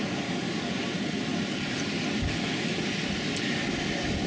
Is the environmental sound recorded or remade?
recorded